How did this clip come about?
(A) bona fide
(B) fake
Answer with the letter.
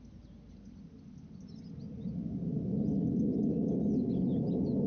A